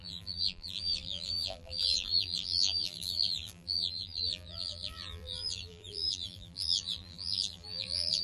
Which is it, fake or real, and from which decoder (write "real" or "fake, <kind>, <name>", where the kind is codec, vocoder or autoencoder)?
fake, vocoder, BigVGAN v2